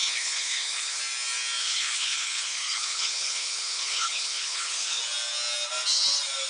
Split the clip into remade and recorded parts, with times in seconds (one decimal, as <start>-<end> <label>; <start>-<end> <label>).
0.0-1.0 remade; 1.0-1.6 recorded; 1.6-5.0 remade; 5.0-6.5 recorded